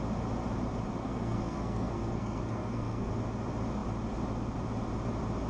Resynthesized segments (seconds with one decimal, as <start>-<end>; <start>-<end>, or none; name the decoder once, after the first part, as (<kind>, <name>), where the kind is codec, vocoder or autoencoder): 1.0-3.1 (codec, SNAC)